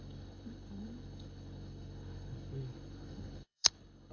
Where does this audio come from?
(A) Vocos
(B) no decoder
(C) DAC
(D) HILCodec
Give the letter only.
D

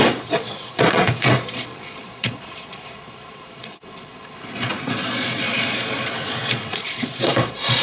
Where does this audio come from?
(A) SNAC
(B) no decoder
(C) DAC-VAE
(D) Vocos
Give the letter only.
D